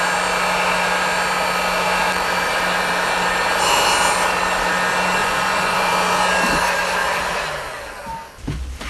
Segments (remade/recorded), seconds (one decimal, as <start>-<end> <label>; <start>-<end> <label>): 0.0-5.2 recorded; 5.2-5.9 remade; 5.9-8.9 recorded